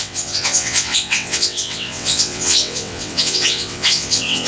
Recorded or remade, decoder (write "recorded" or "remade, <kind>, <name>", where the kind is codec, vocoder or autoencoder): remade, vocoder, WaveNeXt